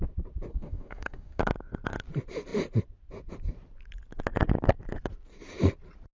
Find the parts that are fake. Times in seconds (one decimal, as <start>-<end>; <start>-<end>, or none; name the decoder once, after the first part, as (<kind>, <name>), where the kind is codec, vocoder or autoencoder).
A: 0.5-1.4 (codec, DAC)